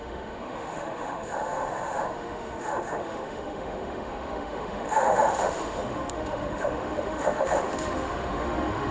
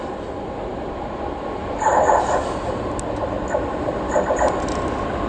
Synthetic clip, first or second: first